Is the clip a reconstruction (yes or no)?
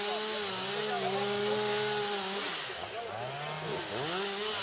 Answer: no